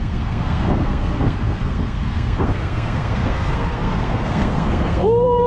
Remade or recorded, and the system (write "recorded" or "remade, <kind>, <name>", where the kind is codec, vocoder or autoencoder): remade, codec, SNAC